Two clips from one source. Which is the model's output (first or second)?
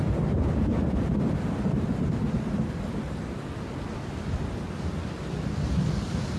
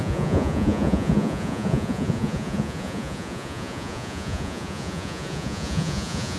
second